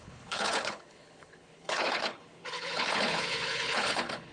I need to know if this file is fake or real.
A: fake